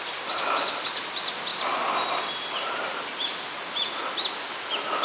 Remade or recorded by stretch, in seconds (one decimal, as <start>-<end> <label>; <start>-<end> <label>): 0.0-5.0 recorded